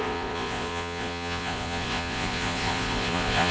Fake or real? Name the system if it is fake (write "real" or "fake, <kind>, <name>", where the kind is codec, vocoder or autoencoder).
fake, vocoder, Vocos